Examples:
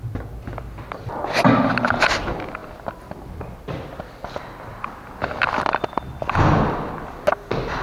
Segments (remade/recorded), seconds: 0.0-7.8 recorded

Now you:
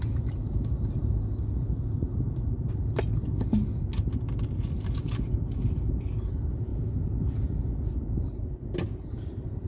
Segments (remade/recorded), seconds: 0.0-9.7 recorded

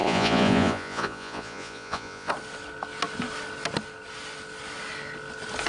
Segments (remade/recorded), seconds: 0.0-2.3 remade; 2.3-5.7 recorded

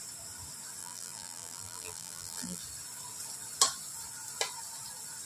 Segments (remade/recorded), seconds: 0.0-0.8 recorded; 0.8-2.6 remade; 2.6-5.2 recorded

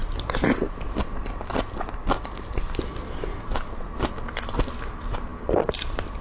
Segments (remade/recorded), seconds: 0.0-6.2 recorded

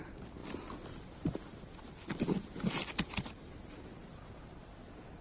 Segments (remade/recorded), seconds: 0.0-5.2 recorded

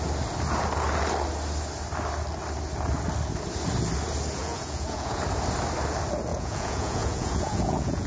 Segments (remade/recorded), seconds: 0.0-4.4 recorded; 4.4-5.2 remade; 5.2-6.3 recorded; 6.3-8.1 remade